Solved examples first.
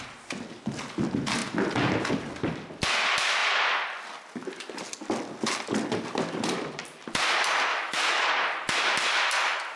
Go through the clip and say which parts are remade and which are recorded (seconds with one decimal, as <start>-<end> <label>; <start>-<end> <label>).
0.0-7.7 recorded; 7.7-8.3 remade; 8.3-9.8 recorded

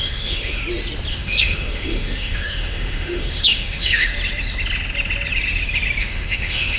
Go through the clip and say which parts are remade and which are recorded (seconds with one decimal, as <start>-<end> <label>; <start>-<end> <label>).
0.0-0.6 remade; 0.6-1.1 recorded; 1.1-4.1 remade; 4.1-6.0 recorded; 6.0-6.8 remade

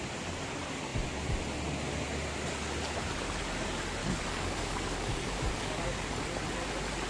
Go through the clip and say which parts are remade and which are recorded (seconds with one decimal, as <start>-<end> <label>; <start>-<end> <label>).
0.0-4.0 recorded; 4.0-6.2 remade; 6.2-7.1 recorded

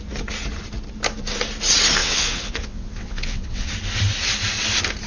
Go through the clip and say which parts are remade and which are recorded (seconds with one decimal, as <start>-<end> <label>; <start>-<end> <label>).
0.0-2.0 recorded; 2.0-3.7 remade; 3.7-5.1 recorded

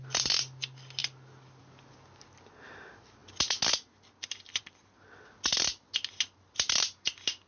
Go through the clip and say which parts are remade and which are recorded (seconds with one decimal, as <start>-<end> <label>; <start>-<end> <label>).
0.0-7.5 recorded

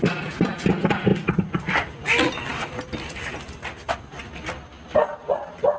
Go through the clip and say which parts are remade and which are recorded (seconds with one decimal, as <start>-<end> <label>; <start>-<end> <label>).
0.0-5.8 recorded